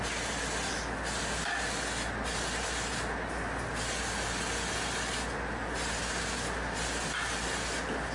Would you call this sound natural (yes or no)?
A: yes